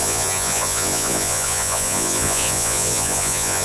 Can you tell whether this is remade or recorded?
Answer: remade